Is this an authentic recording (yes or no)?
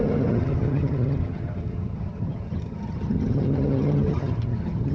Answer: no